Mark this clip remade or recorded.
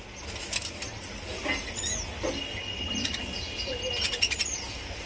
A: recorded